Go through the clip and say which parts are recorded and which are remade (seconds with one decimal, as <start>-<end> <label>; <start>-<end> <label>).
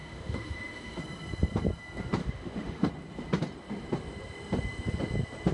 0.0-1.0 remade; 1.0-2.2 recorded; 2.2-2.9 remade; 2.9-5.5 recorded